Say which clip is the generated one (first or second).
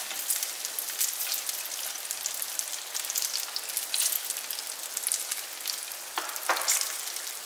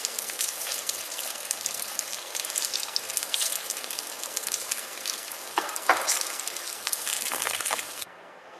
second